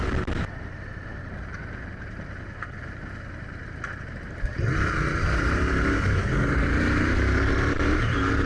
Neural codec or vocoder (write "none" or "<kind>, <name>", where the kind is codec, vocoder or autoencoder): vocoder, BigVGAN v2